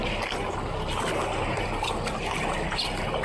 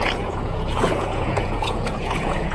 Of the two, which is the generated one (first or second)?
second